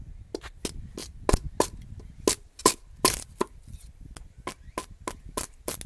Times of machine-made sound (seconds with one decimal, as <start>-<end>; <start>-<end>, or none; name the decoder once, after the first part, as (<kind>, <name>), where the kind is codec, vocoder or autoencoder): none